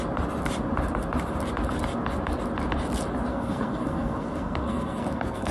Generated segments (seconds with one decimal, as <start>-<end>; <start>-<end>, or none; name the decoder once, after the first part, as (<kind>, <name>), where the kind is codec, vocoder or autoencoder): 3.3-5.5 (codec, SNAC)